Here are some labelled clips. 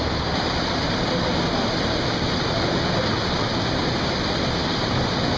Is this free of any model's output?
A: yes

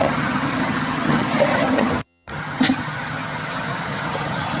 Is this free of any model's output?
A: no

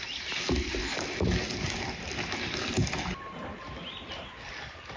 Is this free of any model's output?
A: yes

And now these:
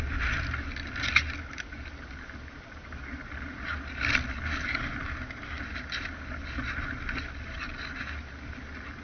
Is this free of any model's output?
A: yes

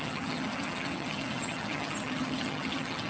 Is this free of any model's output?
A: no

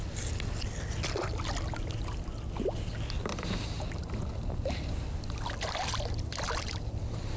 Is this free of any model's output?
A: yes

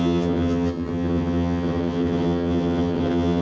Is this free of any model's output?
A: no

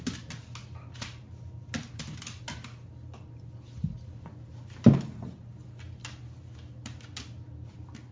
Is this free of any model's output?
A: yes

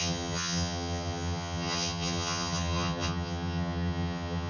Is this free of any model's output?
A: no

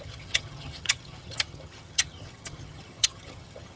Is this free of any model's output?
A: no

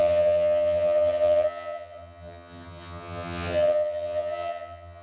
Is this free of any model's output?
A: no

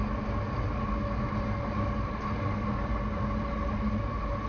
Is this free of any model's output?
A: yes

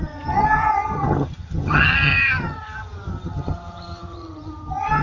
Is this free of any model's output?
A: no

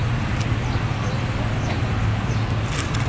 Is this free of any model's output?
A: yes